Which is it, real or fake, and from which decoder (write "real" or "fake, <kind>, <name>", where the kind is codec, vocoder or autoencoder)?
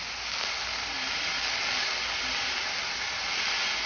real